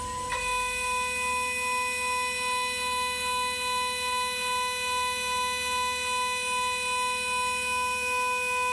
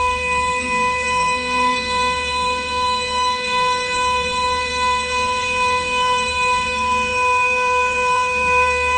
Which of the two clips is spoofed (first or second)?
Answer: second